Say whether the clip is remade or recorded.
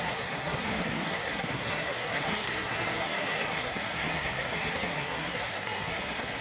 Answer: remade